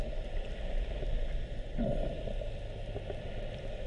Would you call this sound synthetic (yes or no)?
no